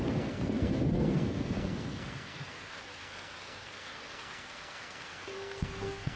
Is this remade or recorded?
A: remade